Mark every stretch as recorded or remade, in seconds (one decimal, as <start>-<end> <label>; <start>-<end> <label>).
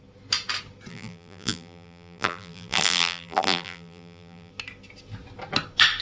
0.0-0.9 recorded; 0.9-4.5 remade; 4.5-6.0 recorded